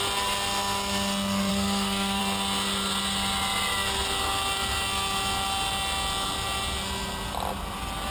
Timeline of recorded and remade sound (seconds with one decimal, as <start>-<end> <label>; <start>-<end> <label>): 0.0-1.5 recorded; 1.5-2.2 remade; 2.2-8.1 recorded